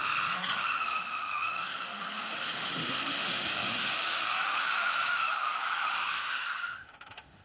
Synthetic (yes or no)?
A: yes